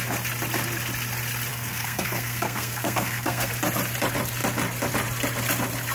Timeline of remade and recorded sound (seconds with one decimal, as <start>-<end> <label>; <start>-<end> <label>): 0.0-1.5 recorded; 1.5-3.5 remade; 3.5-5.9 recorded